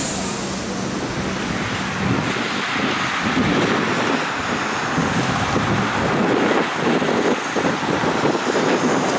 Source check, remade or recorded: recorded